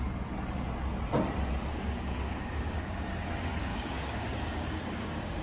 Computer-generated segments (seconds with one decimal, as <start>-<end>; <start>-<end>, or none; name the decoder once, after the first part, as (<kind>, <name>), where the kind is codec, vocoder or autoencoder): 1.7-3.0 (codec, DAC); 3.7-5.4